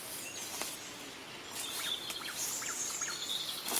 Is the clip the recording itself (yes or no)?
yes